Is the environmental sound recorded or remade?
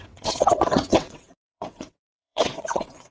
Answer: remade